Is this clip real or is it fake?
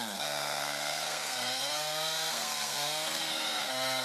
fake